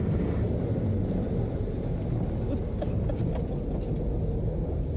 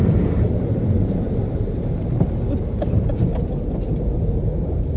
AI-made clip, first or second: second